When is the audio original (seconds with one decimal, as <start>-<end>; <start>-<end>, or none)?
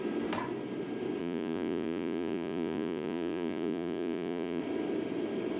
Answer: 0.0-1.2; 4.6-5.6